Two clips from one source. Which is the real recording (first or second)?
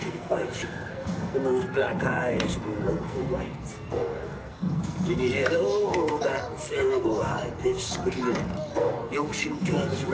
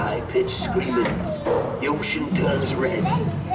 second